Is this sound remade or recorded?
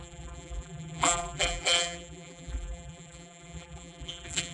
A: remade